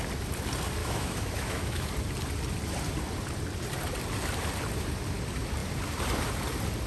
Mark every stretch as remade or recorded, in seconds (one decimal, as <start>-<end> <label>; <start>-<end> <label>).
0.0-0.8 recorded; 0.8-1.9 remade; 1.9-6.9 recorded

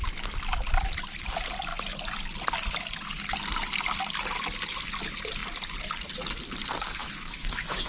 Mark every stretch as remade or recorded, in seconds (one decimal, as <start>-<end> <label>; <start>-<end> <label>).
0.0-7.0 recorded; 7.0-7.9 remade

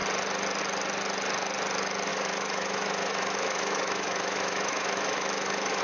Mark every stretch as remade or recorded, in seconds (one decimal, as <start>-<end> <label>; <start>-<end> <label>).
0.0-2.1 recorded; 2.1-5.8 remade

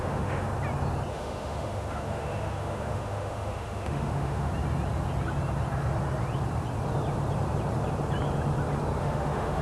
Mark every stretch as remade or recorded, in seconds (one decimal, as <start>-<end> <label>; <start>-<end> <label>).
0.0-0.5 remade; 0.5-1.1 recorded; 1.1-4.5 remade; 4.5-9.0 recorded; 9.0-9.6 remade

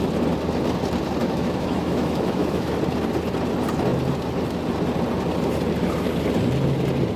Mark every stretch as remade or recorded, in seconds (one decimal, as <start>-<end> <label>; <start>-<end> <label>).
0.0-1.2 recorded; 1.2-2.7 remade; 2.7-7.2 recorded